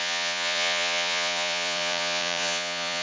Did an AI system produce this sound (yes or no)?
yes